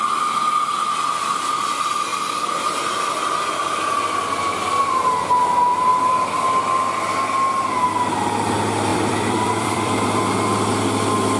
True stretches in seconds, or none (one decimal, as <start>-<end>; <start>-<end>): 0.0-8.9; 10.2-11.4